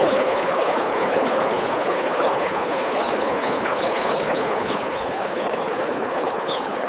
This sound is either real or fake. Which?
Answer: fake